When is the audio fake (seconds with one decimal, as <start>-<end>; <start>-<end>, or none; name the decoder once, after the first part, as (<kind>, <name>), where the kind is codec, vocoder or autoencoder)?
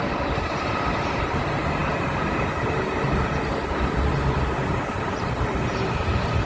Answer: none